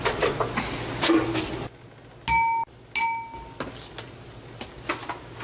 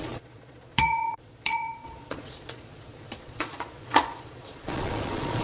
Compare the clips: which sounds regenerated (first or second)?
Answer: second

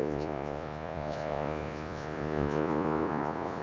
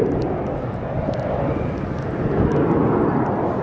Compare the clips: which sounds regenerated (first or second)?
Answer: first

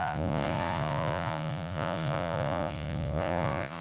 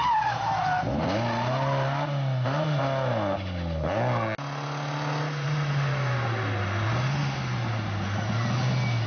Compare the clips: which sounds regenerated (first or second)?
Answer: first